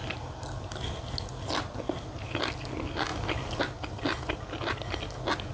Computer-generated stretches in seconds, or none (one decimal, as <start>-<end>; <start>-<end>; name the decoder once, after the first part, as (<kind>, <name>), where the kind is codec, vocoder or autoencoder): none